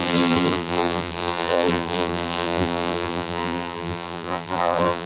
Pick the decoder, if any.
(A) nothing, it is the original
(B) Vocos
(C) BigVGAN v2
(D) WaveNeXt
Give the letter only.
C